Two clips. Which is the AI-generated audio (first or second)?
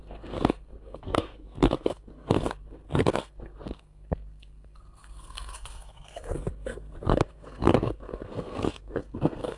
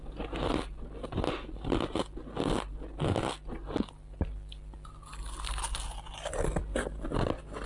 first